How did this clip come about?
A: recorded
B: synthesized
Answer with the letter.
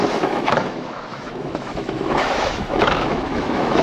B